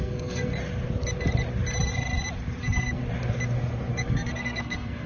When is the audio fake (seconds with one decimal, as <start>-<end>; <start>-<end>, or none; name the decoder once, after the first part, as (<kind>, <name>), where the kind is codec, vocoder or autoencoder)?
0.0-0.5 (codec, SNAC); 2.6-3.0; 3.9-5.1